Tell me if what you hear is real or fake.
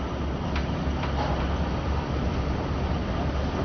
real